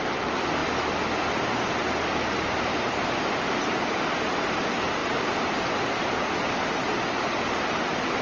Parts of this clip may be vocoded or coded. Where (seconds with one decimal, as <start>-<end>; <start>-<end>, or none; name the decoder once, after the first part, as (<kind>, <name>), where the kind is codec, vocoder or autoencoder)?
none